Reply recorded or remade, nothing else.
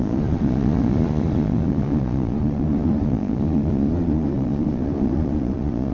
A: remade